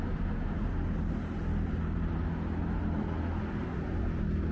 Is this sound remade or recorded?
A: recorded